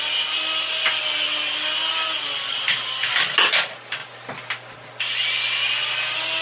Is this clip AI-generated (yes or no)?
no